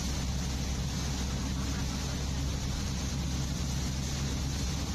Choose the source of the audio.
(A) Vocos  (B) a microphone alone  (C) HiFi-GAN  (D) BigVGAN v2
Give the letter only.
B